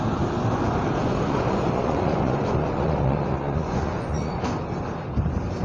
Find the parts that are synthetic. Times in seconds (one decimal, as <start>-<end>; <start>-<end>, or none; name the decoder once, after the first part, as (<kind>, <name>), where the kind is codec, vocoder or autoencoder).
1.0-4.4 (vocoder, Vocos)